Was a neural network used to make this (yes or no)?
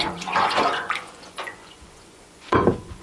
yes